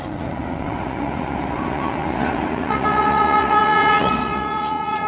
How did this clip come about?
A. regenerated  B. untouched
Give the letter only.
A